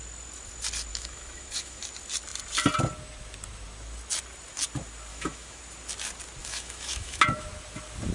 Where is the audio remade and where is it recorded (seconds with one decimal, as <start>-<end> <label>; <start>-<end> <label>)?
0.0-0.9 recorded; 0.9-1.8 remade; 1.8-5.1 recorded; 5.1-5.6 remade; 5.6-6.4 recorded; 6.4-7.2 remade; 7.2-8.1 recorded